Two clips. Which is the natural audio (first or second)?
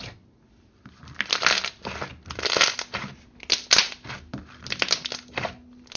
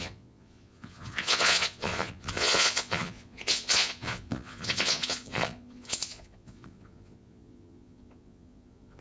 first